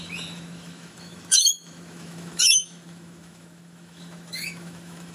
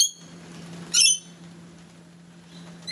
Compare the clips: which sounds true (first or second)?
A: second